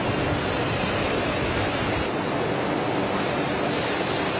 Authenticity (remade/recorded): recorded